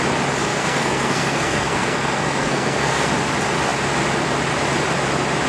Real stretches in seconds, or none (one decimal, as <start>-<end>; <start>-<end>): 0.0-0.5; 3.1-5.5